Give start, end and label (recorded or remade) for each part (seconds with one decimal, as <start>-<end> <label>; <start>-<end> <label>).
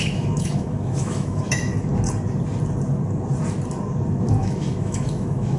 0.0-1.7 remade; 1.7-4.4 recorded; 4.4-5.6 remade